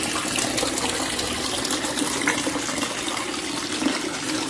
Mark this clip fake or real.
real